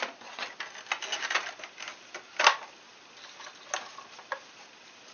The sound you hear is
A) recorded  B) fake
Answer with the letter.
A